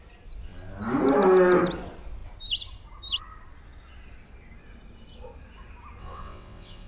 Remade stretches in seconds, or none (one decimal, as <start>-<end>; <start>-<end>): 6.0-6.9